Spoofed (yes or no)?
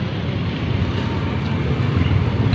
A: no